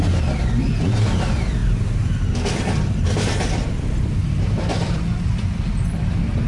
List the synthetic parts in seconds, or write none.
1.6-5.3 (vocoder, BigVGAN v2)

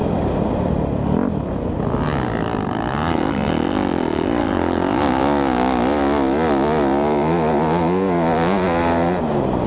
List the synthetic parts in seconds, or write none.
none

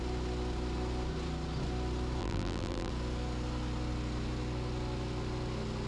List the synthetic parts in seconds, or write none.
2.2-2.9 (vocoder, BigVGAN v2)

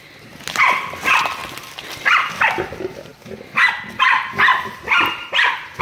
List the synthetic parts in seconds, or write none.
1.4-2.3 (vocoder, BigVGAN v2); 4.5-5.8